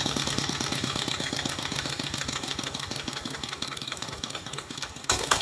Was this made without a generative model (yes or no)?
no